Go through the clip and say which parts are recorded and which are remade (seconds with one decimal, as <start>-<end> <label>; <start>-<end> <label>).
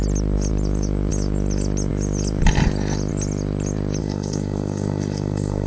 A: 0.0-4.0 recorded; 4.0-5.7 remade